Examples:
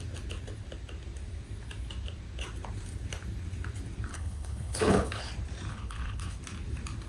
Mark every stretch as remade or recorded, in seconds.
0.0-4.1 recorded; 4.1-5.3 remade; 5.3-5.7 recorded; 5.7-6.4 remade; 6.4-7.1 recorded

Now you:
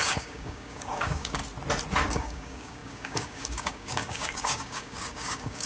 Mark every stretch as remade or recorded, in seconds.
0.0-1.4 remade; 1.4-2.1 recorded; 2.1-5.7 remade